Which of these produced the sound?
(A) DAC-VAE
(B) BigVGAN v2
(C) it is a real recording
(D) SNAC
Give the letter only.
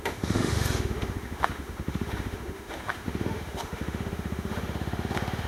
A